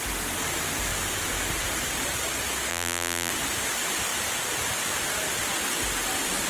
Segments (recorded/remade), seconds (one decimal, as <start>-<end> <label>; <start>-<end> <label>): 0.0-2.7 recorded; 2.7-3.3 remade; 3.3-6.5 recorded